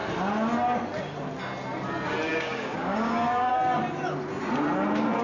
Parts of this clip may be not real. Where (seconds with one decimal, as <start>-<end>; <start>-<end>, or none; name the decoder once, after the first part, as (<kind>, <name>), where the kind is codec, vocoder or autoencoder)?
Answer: 2.3-3.5 (codec, DAC)